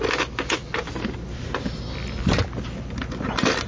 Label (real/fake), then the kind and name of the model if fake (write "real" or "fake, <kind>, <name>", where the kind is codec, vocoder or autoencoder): real